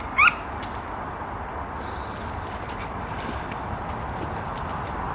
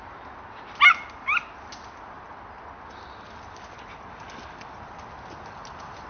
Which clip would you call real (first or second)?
second